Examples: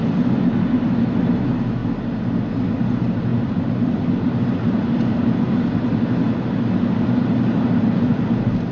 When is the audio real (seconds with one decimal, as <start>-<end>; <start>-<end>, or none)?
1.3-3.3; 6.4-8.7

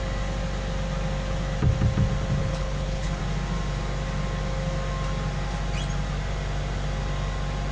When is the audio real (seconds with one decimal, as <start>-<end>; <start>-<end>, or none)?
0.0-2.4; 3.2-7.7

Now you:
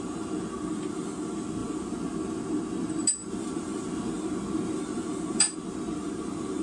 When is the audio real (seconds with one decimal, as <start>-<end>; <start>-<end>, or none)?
0.0-6.6

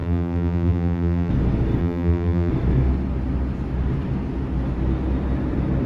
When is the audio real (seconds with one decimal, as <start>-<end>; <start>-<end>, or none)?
1.3-1.8; 2.5-5.9

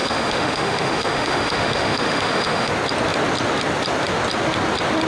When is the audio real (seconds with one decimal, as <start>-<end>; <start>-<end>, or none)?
2.7-5.1

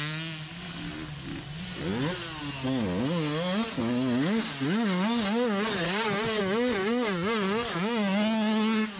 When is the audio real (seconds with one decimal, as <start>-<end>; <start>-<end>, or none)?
0.0-9.0

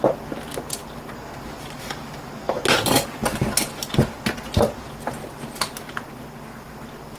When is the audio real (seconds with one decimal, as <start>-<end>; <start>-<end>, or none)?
0.0-7.2

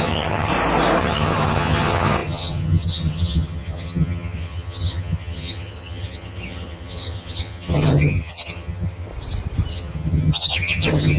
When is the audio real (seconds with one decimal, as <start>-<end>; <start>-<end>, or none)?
0.5-1.0; 9.1-9.7